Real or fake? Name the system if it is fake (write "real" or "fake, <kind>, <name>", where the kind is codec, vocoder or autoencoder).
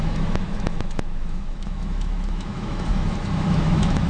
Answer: fake, autoencoder, DAC-VAE